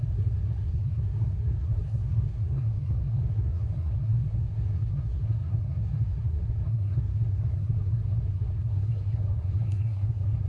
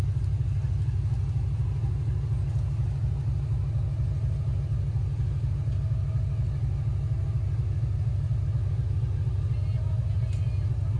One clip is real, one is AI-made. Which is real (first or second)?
second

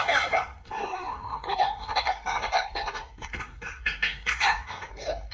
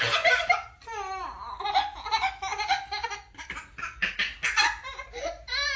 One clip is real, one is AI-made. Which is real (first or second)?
second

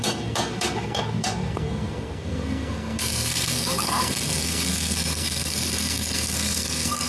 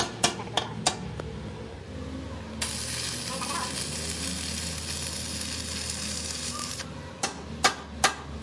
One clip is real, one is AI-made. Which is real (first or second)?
second